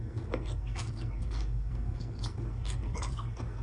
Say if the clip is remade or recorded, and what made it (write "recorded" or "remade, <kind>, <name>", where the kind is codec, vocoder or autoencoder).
remade, codec, SNAC